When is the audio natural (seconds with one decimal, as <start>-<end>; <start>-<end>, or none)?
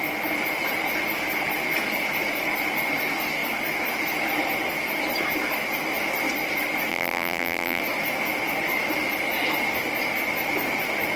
0.0-6.9; 7.8-11.2